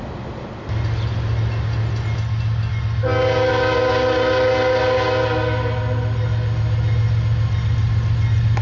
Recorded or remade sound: recorded